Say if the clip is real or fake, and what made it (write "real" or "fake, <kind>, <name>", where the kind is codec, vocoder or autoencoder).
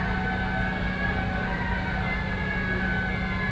real